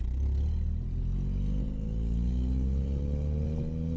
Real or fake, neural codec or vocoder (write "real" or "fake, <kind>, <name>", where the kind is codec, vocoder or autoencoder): real